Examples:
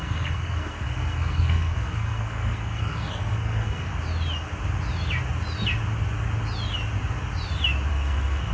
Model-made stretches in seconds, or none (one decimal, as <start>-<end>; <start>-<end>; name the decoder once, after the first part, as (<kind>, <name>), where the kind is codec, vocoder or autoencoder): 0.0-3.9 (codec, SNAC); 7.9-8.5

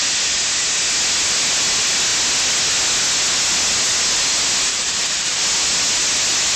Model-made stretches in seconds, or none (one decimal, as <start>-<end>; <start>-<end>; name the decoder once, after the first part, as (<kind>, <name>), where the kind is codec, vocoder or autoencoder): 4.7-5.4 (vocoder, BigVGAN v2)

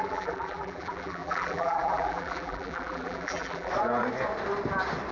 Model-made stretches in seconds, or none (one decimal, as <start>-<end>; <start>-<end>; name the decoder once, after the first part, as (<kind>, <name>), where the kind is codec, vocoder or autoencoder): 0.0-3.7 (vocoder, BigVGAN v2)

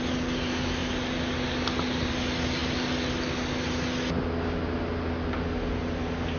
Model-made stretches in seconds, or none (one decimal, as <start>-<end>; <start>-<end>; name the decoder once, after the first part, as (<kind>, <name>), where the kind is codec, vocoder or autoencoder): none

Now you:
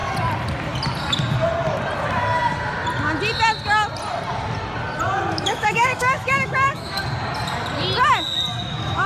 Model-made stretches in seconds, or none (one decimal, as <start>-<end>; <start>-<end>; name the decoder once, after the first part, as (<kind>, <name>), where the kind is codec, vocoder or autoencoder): 5.3-7.0 (autoencoder, DAC-VAE); 8.7-9.1